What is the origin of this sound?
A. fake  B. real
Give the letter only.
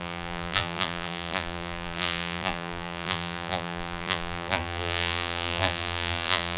A